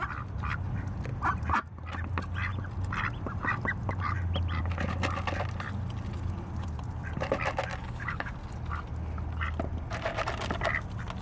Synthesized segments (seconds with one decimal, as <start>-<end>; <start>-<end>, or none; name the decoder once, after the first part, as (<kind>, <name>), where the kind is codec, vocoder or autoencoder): 7.8-8.3 (codec, HILCodec)